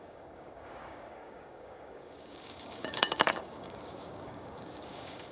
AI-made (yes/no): yes